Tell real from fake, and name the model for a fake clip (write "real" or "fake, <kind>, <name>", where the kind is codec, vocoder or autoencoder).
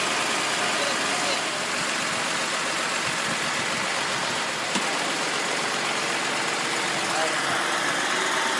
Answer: real